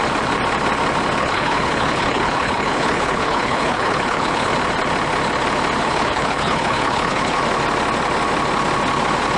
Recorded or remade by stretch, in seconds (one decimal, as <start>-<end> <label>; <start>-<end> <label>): 0.0-1.2 recorded; 1.2-4.5 remade; 4.5-5.8 recorded; 5.8-7.4 remade; 7.4-9.4 recorded